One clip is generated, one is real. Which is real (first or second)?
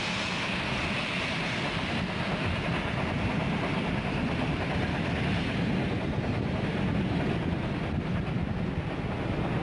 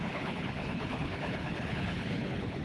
first